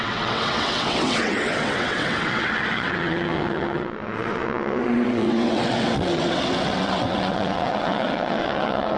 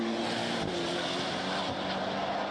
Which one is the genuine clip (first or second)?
second